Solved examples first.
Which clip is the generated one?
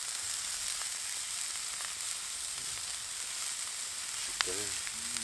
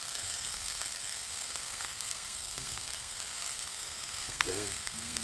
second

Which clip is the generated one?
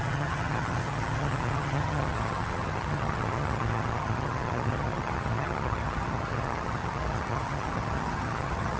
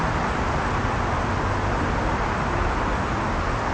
first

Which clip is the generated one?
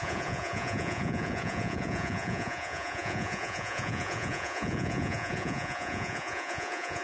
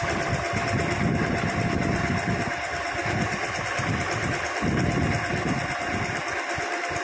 first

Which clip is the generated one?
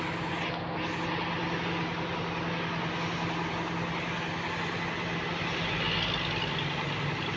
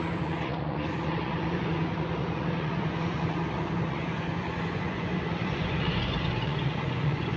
second